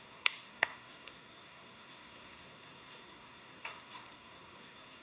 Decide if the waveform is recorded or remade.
remade